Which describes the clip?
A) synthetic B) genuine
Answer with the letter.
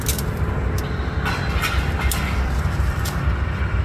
B